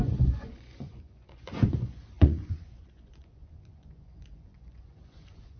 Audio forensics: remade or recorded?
remade